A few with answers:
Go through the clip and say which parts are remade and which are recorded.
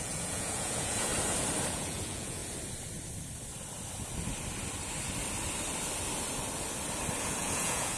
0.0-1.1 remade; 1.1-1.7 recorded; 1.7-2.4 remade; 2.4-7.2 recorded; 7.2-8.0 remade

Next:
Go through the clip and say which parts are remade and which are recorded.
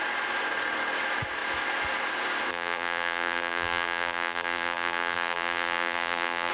0.0-2.5 recorded; 2.5-6.5 remade